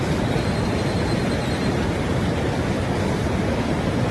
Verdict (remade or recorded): recorded